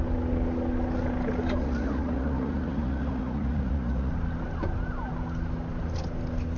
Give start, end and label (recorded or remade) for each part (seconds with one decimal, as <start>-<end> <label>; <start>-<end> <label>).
0.0-1.6 recorded; 1.6-4.1 remade; 4.1-6.6 recorded